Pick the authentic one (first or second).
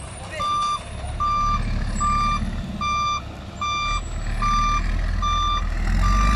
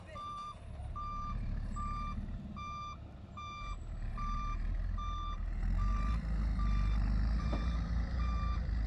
first